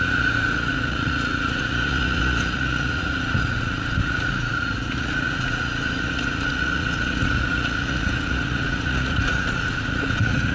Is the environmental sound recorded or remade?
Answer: remade